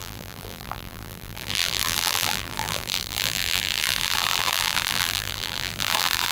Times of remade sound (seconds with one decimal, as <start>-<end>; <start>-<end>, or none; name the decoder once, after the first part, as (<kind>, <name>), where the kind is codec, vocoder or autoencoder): 0.0-6.3 (vocoder, BigVGAN v2)